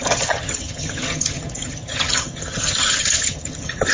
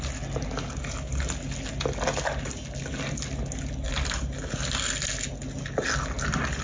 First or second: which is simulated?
first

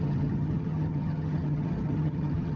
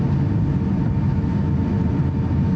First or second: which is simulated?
first